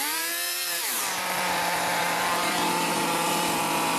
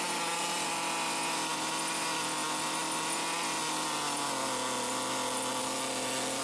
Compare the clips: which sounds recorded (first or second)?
second